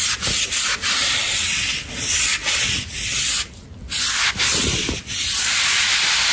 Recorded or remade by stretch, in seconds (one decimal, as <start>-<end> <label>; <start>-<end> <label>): 0.0-6.3 recorded